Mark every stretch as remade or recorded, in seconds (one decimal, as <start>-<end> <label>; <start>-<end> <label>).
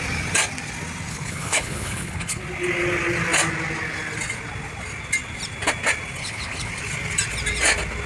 0.0-1.1 recorded; 1.1-2.4 remade; 2.4-6.2 recorded; 6.2-6.7 remade; 6.7-8.1 recorded